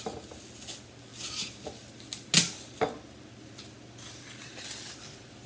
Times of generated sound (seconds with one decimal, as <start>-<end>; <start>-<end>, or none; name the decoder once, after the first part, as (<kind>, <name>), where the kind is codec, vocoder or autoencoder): none